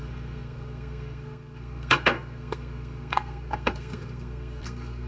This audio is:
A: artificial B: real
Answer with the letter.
A